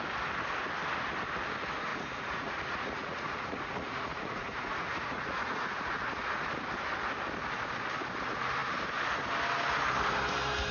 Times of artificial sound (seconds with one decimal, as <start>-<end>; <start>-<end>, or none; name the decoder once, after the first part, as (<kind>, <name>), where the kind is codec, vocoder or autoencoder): 1.9-6.5 (vocoder, Vocos)